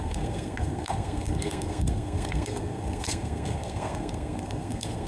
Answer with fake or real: fake